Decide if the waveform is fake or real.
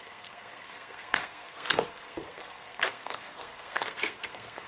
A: fake